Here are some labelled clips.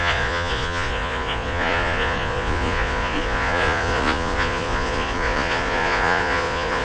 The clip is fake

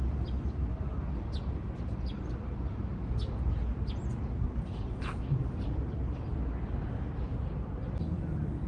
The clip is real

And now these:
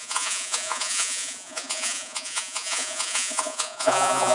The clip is fake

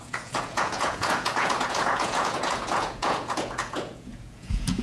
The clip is fake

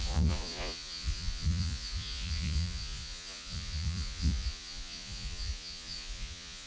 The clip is fake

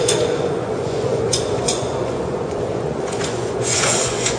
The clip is fake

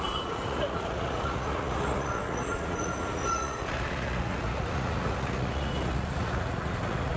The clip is fake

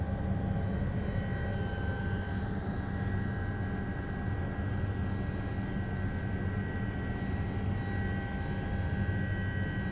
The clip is real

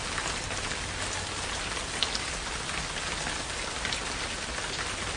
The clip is real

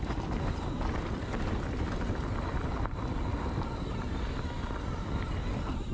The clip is real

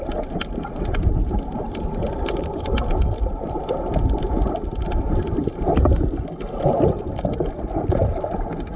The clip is real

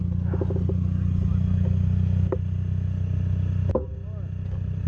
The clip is real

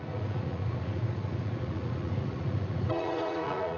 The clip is fake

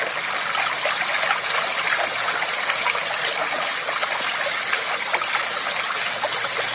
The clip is real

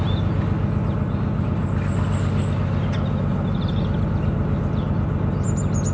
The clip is real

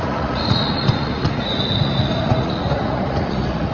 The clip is fake